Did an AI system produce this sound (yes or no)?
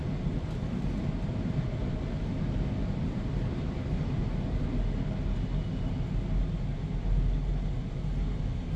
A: no